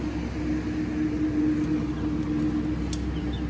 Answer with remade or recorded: recorded